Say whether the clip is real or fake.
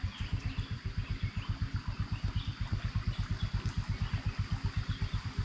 real